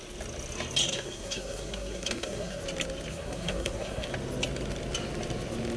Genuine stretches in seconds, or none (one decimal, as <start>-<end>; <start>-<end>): 0.0-0.8; 2.6-3.1; 4.1-5.8